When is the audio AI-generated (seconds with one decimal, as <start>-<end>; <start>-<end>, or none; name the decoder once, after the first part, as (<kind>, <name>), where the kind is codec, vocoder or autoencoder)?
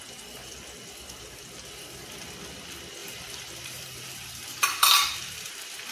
3.0-5.5 (vocoder, BigVGAN v2)